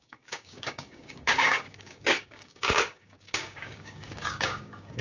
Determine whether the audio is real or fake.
fake